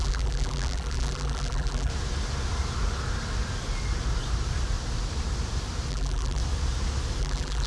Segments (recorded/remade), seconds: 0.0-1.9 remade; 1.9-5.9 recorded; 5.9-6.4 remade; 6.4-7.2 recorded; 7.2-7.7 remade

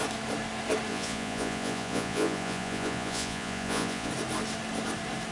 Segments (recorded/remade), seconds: 0.0-0.9 recorded; 0.9-4.1 remade; 4.1-5.3 recorded

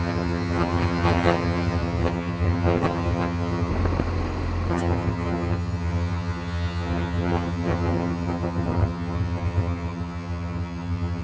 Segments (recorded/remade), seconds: 0.0-3.7 remade; 3.7-4.7 recorded; 4.7-11.2 remade

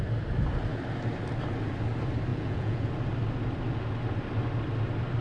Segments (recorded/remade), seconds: 0.0-2.3 recorded; 2.3-2.9 remade; 2.9-5.2 recorded

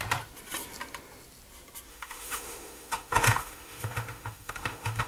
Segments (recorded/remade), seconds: 0.0-1.9 recorded; 1.9-5.1 remade

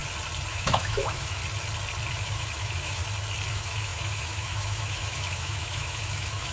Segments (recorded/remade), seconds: 0.0-0.5 recorded; 0.5-1.4 remade; 1.4-2.1 recorded; 2.1-3.0 remade; 3.0-3.5 recorded; 3.5-6.5 remade